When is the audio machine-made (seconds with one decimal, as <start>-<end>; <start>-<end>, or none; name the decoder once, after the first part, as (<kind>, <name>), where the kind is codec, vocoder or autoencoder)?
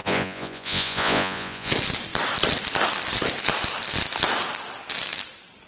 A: 0.0-1.7 (vocoder, Vocos)